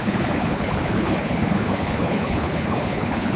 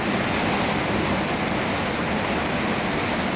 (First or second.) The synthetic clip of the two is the first